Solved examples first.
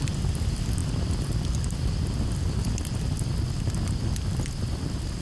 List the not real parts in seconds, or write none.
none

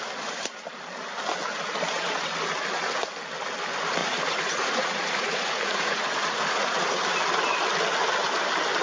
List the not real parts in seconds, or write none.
4.0-7.0 (vocoder, Vocos)

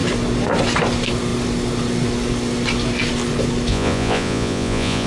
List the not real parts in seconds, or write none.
3.7-5.1 (vocoder, Vocos)

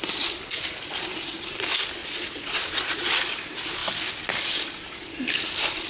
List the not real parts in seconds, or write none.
2.0-3.1 (vocoder, Vocos)